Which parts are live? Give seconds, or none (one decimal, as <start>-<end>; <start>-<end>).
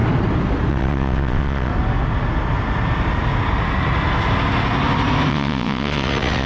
0.0-0.7; 1.7-5.3